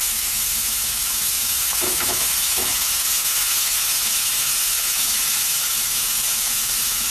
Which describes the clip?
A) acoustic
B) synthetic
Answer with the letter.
B